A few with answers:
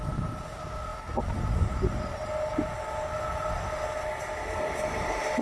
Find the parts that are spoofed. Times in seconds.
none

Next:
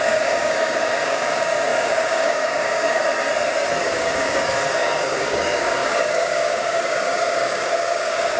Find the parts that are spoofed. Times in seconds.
0.0-3.1 (codec, DAC); 3.8-8.4

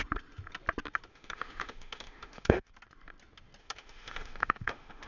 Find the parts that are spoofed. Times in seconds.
1.1-2.7 (autoencoder, DAC-VAE); 3.6-5.1

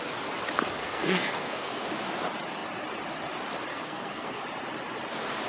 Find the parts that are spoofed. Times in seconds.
0.8-1.9 (codec, SNAC); 3.7-4.4

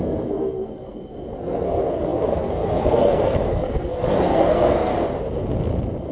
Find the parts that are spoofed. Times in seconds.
0.0-4.9 (codec, SNAC)